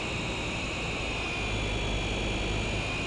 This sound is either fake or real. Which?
real